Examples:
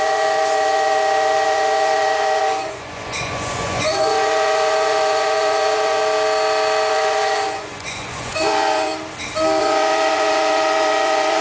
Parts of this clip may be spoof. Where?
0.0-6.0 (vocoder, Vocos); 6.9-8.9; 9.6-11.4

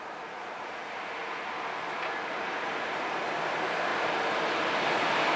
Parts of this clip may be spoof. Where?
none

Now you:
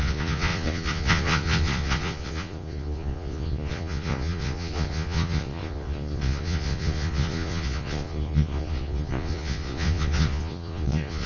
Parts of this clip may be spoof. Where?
0.0-11.3 (vocoder, Vocos)